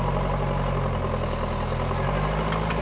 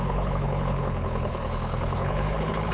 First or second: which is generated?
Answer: second